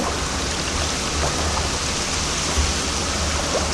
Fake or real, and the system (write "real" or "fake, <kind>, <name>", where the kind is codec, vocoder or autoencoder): real